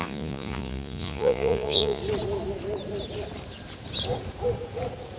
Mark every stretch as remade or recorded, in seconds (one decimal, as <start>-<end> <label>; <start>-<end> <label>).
0.0-2.0 remade; 2.0-5.2 recorded